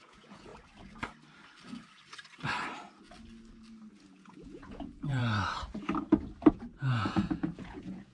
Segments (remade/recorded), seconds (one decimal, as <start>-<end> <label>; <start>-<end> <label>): 0.0-0.5 remade; 0.5-4.1 recorded; 4.1-5.2 remade; 5.2-6.5 recorded; 6.5-8.1 remade